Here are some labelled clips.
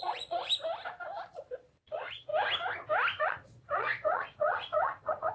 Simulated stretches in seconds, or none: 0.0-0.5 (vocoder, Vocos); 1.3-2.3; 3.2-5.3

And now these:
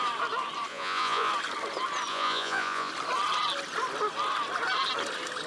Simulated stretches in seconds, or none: 0.7-1.3 (vocoder, Vocos); 2.1-2.9

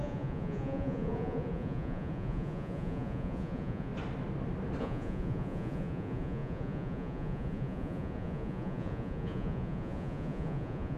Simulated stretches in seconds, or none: 0.0-3.9 (vocoder, Vocos); 4.8-11.0

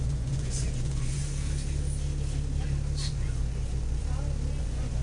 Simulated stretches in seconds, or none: 0.0-1.2 (vocoder, Vocos); 3.1-4.0; 4.6-5.0

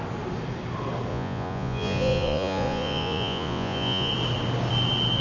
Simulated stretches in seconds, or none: 1.1-4.1 (vocoder, Vocos)